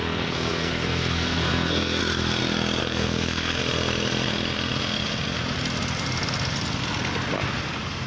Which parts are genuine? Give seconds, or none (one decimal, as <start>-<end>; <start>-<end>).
2.0-2.8; 3.6-8.1